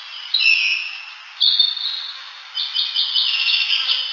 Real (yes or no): yes